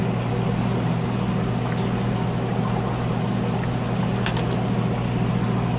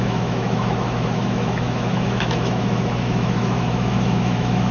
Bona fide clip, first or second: first